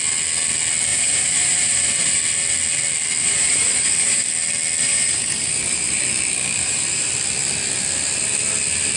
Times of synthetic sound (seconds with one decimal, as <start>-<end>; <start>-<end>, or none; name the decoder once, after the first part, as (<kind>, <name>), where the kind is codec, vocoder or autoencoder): 0.9-2.2 (vocoder, BigVGAN v2); 3.2-4.3; 4.8-6.0; 6.6-7.1

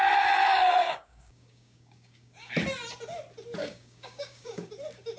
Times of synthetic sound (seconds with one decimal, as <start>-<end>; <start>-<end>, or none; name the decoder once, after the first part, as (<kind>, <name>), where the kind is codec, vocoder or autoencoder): 0.8-2.5 (codec, DAC); 3.6-4.7